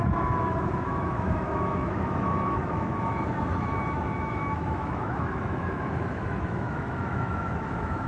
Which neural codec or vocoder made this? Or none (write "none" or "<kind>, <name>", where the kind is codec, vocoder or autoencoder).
autoencoder, DAC-VAE